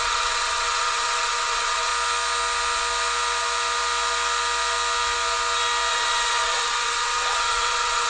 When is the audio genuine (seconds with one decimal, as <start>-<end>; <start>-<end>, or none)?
1.9-5.9